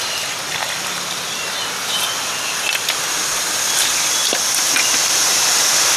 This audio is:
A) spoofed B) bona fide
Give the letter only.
B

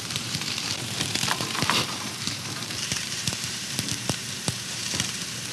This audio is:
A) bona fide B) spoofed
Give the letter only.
B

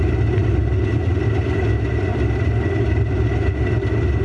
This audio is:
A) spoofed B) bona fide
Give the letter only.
B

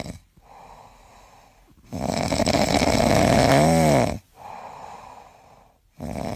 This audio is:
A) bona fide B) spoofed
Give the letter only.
A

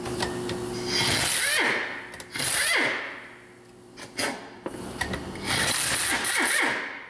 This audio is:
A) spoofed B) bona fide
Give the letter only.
B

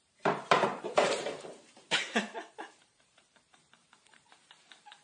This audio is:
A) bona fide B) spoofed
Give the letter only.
B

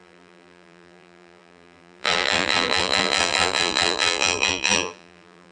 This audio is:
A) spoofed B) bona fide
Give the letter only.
A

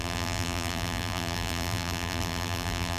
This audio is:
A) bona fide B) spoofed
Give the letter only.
B